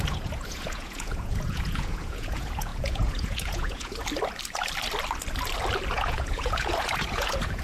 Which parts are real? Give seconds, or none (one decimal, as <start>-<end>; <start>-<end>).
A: 4.0-5.9